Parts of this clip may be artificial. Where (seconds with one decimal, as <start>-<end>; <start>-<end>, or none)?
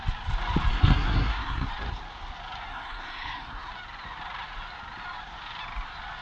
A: 0.7-1.7; 2.7-3.7